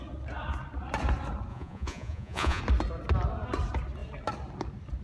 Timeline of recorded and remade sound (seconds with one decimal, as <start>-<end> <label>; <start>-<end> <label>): 0.0-1.5 recorded; 1.5-2.6 remade; 2.6-5.0 recorded